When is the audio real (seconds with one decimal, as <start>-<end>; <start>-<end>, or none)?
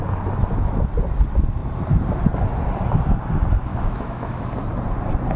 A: 0.0-3.7; 4.4-5.4